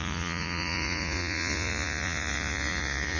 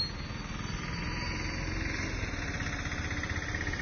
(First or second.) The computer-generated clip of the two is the first